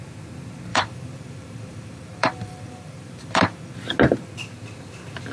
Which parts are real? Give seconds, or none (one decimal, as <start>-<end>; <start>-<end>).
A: 0.0-0.7; 3.7-5.3